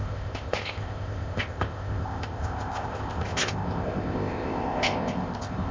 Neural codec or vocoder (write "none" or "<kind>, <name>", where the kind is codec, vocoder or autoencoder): codec, ZipCodec